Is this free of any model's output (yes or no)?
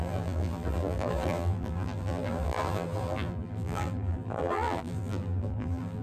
no